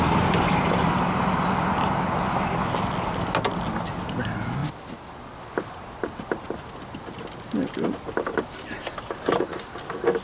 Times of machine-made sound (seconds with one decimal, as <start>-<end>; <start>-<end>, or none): none